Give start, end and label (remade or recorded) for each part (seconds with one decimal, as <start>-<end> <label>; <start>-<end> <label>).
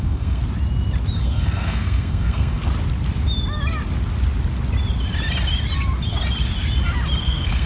0.0-0.4 remade; 0.4-1.2 recorded; 1.2-2.6 remade; 2.6-7.2 recorded; 7.2-7.7 remade